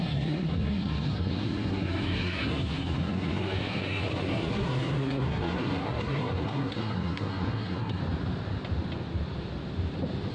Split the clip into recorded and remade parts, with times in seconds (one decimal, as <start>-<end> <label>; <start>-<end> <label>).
0.0-8.0 remade; 8.0-10.3 recorded